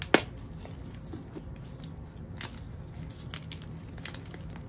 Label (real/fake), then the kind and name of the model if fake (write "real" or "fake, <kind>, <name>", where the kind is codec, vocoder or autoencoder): real